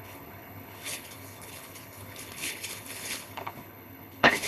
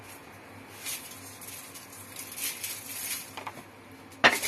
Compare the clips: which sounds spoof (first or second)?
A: first